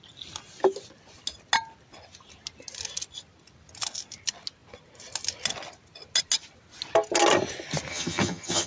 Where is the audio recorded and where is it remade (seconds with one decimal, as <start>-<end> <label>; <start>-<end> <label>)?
0.0-7.9 recorded; 7.9-8.7 remade